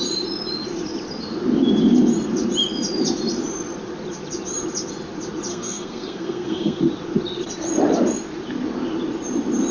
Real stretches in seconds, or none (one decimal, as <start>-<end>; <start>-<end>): 0.0-5.5; 6.8-9.7